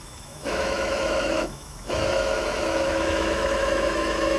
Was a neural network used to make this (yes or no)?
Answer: yes